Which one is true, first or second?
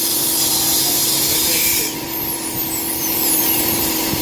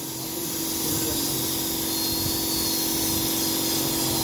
second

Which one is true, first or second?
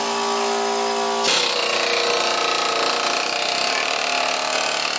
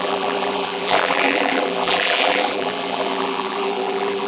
first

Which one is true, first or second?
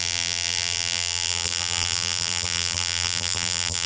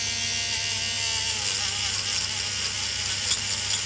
second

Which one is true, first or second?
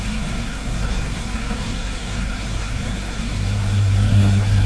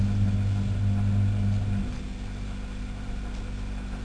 second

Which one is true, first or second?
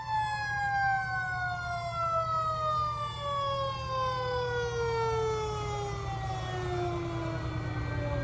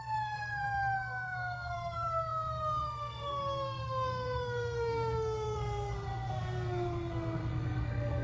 first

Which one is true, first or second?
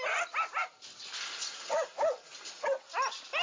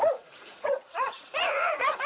first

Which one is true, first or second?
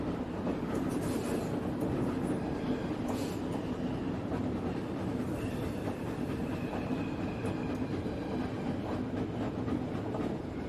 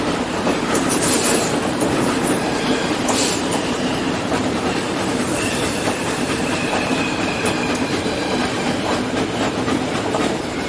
first